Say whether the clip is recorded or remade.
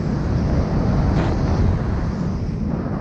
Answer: recorded